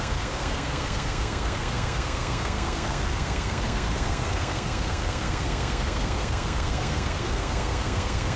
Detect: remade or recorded remade